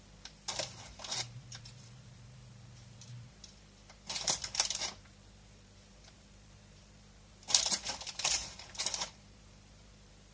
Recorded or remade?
remade